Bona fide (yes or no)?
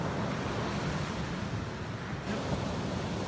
yes